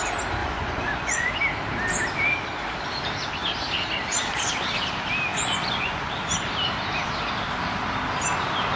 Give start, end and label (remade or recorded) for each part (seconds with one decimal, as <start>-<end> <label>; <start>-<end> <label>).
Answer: 0.0-0.4 recorded; 0.4-1.3 remade; 1.3-5.3 recorded; 5.3-6.1 remade; 6.1-8.8 recorded